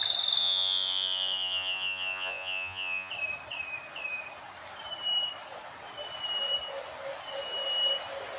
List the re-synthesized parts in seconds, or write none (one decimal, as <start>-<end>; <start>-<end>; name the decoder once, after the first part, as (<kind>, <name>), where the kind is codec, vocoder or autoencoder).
0.4-3.1 (vocoder, Vocos)